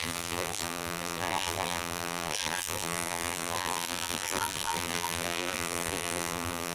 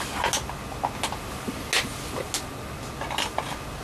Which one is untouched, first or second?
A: second